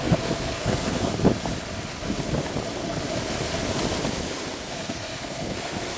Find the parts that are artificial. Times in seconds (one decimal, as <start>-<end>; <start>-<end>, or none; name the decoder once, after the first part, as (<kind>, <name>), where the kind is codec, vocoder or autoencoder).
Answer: 0.0-1.1 (codec, SNAC); 4.7-6.0